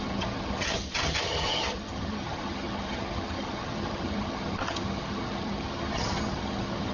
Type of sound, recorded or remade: remade